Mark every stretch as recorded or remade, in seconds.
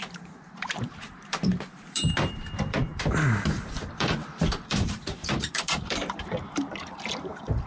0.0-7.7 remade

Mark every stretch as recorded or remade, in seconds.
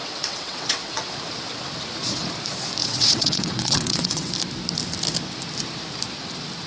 0.0-1.0 remade; 1.0-2.8 recorded; 2.8-4.3 remade; 4.3-6.7 recorded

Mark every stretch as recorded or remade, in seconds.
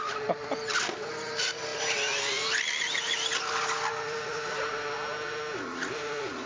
0.0-6.5 recorded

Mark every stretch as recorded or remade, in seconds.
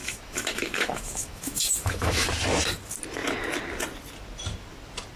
0.0-2.3 remade; 2.3-5.2 recorded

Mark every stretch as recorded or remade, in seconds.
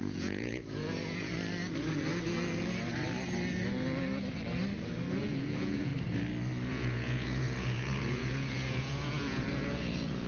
0.0-1.3 remade; 1.3-5.1 recorded; 5.1-5.9 remade; 5.9-6.7 recorded; 6.7-10.3 remade